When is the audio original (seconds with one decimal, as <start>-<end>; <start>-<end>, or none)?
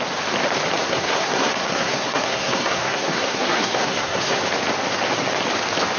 0.0-0.8; 4.4-6.0